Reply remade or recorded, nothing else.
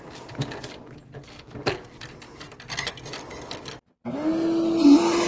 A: recorded